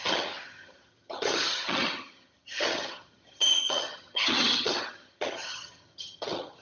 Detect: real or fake fake